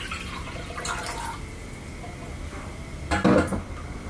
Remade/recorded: recorded